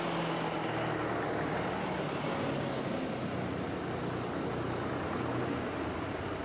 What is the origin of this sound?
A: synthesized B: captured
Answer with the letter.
B